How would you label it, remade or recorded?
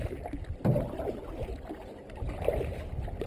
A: recorded